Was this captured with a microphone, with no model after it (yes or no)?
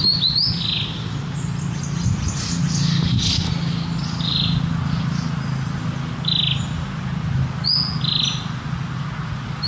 yes